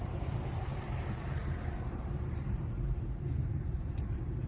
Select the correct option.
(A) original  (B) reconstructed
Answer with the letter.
B